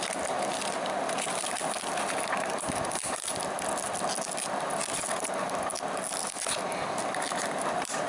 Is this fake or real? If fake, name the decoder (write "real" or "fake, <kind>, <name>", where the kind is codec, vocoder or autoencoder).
real